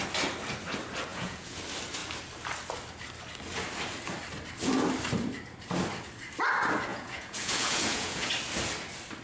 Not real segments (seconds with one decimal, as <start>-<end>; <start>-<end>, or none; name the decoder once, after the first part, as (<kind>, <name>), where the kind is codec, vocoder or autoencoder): 1.1-1.6 (vocoder, Vocos); 6.9-8.3